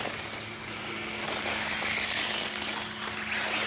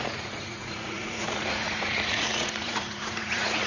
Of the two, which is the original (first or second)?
first